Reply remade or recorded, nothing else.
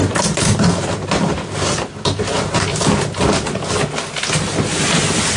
recorded